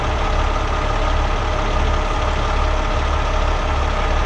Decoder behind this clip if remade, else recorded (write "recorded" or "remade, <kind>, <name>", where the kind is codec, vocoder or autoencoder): recorded